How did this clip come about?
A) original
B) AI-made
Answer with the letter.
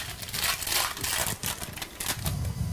A